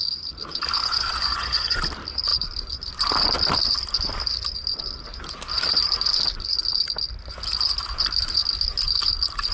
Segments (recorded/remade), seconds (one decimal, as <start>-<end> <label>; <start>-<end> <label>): 0.0-0.8 recorded; 0.8-1.8 remade; 1.8-9.5 recorded